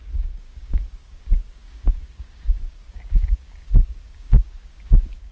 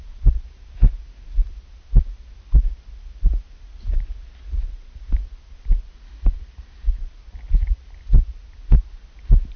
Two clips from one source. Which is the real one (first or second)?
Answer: second